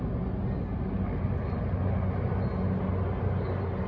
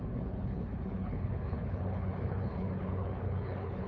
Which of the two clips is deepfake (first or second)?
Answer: second